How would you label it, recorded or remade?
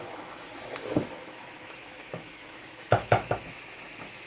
remade